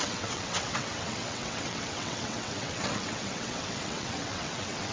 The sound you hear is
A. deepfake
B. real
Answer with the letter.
A